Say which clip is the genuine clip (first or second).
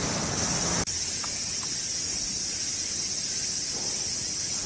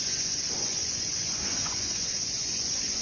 first